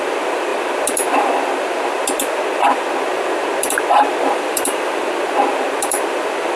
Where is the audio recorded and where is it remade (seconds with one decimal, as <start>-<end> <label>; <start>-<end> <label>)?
0.0-6.6 remade